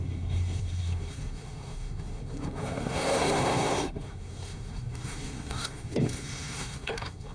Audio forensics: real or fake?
fake